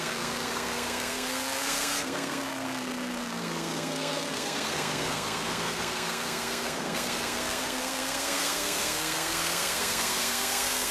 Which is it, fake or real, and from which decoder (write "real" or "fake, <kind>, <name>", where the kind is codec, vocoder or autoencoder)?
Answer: fake, codec, SNAC